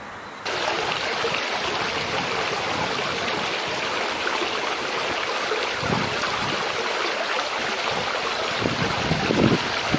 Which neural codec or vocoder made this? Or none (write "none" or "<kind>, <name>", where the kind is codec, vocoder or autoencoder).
none